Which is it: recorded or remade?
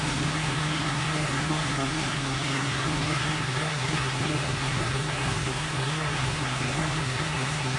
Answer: remade